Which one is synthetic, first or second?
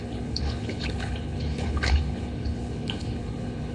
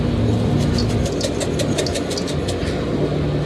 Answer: first